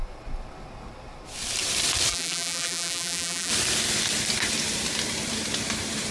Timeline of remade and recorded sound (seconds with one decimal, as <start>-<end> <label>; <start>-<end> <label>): 0.0-2.1 recorded; 2.1-3.5 remade; 3.5-6.1 recorded